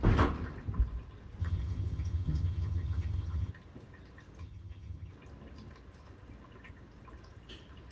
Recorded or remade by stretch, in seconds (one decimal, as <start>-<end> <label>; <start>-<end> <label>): 0.0-1.4 recorded; 1.4-3.5 remade; 3.5-4.4 recorded; 4.4-5.1 remade; 5.1-7.9 recorded